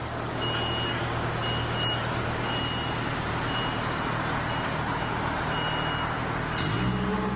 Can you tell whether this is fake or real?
real